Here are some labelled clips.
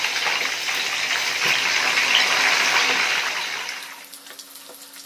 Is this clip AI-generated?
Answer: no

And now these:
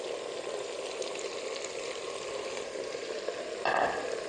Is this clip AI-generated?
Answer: no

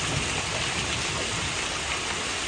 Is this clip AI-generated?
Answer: no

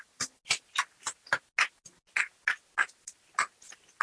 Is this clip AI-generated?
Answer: no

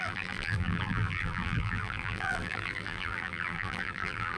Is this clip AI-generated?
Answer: yes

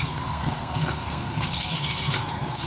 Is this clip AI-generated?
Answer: yes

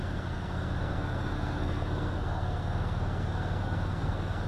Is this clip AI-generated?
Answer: yes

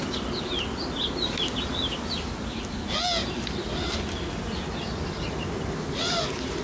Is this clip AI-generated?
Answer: no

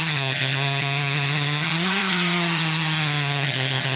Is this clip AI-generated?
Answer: yes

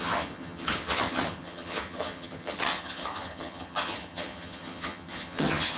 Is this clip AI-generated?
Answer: yes